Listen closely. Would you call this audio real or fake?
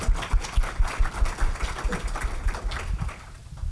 real